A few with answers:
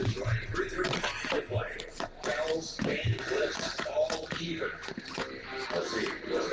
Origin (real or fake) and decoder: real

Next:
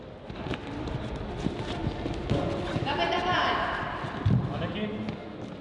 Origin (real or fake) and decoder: real